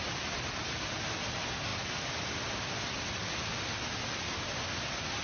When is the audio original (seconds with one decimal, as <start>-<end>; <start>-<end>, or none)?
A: 0.0-5.2